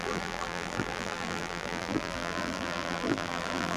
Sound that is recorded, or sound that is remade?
remade